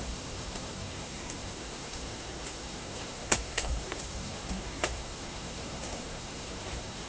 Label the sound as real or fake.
fake